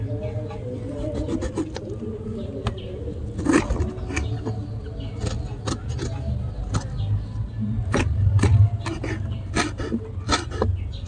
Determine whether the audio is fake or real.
real